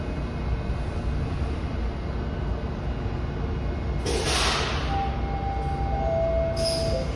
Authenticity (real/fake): real